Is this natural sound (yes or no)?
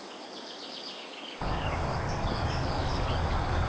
no